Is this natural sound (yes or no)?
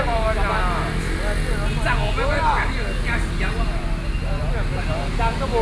yes